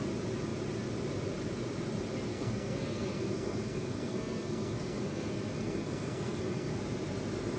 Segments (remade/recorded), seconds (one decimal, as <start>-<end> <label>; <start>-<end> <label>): 0.0-2.3 recorded; 2.3-6.8 remade; 6.8-7.6 recorded